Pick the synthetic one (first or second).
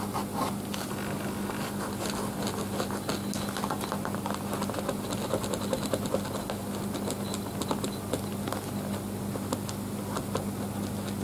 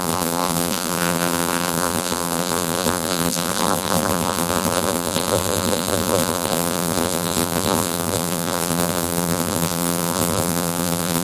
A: second